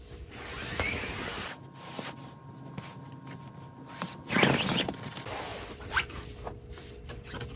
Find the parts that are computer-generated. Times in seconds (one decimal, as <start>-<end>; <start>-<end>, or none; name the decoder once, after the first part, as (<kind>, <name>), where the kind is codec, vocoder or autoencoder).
none